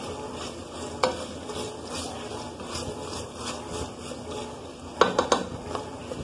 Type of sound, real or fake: real